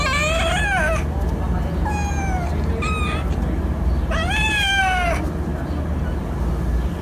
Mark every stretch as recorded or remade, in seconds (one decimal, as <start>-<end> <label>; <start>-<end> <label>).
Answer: 0.0-2.7 recorded; 2.7-4.8 remade; 4.8-5.5 recorded; 5.5-6.0 remade; 6.0-7.0 recorded